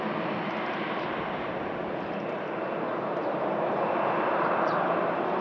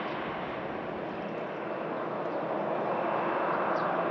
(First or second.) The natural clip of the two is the second